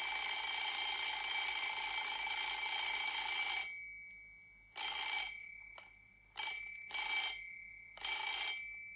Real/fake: real